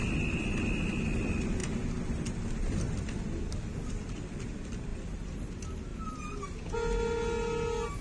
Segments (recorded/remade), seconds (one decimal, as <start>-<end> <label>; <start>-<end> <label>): 0.0-8.0 recorded